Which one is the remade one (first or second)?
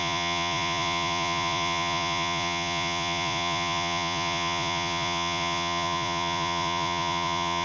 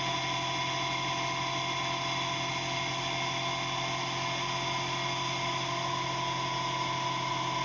first